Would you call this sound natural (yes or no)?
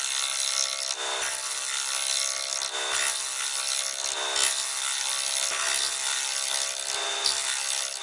yes